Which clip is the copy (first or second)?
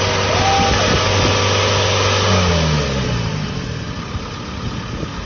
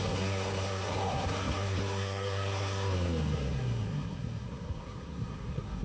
second